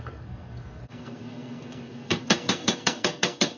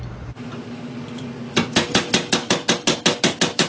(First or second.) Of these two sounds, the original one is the second